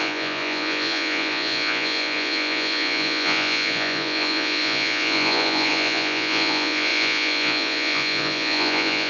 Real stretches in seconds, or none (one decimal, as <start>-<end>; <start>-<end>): none